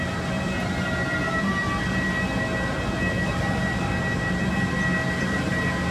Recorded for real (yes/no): yes